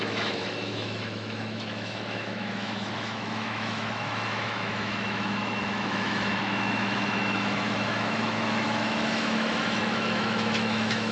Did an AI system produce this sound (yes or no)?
yes